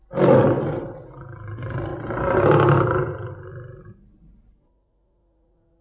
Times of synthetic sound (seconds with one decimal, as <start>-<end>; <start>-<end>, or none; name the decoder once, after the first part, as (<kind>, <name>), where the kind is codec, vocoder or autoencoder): none